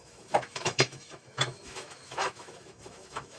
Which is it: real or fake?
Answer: fake